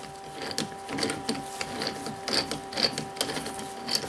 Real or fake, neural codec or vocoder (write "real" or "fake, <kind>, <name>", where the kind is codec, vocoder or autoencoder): real